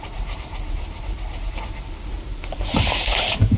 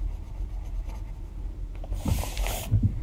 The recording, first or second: second